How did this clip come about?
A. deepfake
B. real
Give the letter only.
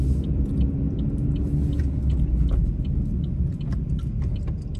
B